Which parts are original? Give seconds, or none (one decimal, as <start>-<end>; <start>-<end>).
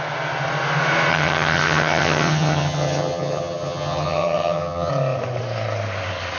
0.0-1.1; 4.9-6.4